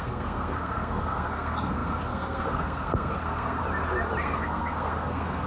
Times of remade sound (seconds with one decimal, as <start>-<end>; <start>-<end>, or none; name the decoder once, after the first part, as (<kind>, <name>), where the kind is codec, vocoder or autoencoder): 0.0-3.6 (codec, SNAC); 4.2-5.5